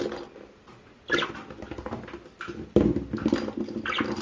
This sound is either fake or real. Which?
real